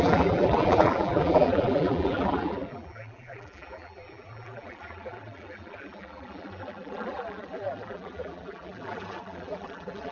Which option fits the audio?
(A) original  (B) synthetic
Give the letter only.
B